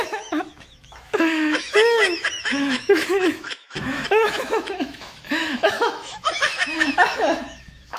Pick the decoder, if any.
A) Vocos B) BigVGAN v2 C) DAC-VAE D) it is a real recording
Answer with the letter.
C